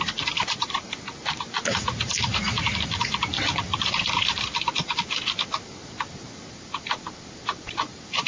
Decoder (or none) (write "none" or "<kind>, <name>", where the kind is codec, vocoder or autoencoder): vocoder, BigVGAN v2